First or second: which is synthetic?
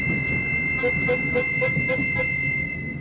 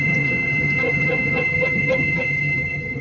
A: second